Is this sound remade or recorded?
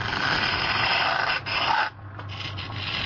recorded